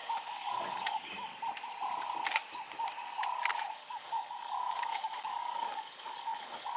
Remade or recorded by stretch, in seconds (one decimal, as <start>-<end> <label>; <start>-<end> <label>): 0.0-1.3 remade; 1.3-3.7 recorded; 3.7-6.8 remade